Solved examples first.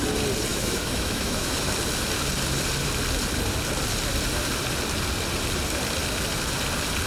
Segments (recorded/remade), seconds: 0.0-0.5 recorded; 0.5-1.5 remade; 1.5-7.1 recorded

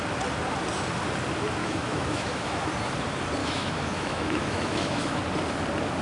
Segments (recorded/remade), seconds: 0.0-1.6 recorded; 1.6-2.7 remade; 2.7-3.4 recorded; 3.4-5.2 remade; 5.2-6.0 recorded

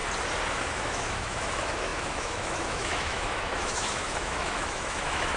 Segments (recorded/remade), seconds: 0.0-0.5 recorded; 0.5-5.4 remade

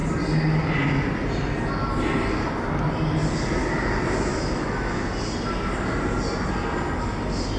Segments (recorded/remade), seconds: 0.0-4.3 recorded; 4.3-5.0 remade; 5.0-7.6 recorded

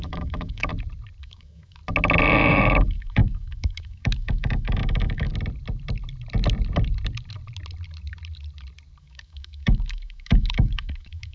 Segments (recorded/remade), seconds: 0.0-0.7 remade; 0.7-1.2 recorded; 1.2-1.8 remade; 1.8-2.5 recorded; 2.5-5.3 remade; 5.3-9.0 recorded; 9.0-11.3 remade